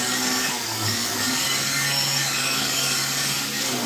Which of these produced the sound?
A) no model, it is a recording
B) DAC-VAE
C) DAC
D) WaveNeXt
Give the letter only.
C